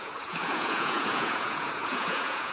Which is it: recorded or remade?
remade